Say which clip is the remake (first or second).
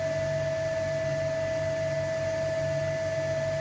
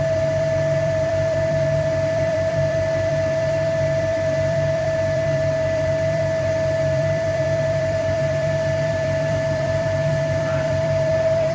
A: second